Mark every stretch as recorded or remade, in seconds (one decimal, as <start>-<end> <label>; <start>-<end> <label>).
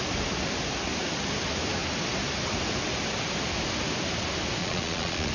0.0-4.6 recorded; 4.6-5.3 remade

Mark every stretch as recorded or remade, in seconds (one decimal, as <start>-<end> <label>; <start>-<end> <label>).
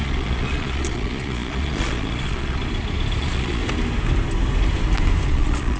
0.0-2.6 remade; 2.6-3.2 recorded; 3.2-3.6 remade; 3.6-5.3 recorded; 5.3-5.8 remade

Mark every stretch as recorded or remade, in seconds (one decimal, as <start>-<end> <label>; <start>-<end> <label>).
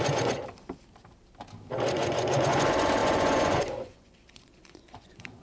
0.0-0.4 remade; 0.4-1.9 recorded; 1.9-5.4 remade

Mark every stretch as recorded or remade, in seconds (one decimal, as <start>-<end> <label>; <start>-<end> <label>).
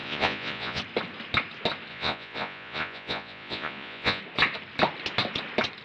0.0-0.8 remade; 0.8-1.9 recorded; 1.9-4.2 remade; 4.2-5.8 recorded